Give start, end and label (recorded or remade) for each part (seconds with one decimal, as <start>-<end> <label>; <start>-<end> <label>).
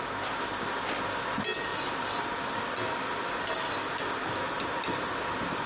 0.0-5.7 recorded